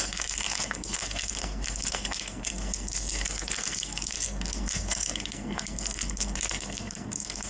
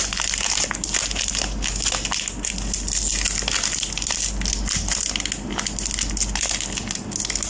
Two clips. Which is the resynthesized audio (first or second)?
first